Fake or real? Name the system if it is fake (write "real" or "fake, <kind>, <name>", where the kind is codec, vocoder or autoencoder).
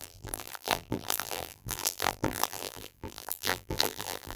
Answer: fake, vocoder, BigVGAN v2